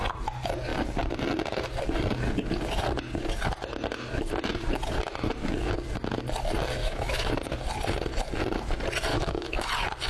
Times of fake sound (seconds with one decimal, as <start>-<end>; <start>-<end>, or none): 6.8-7.3; 9.1-9.7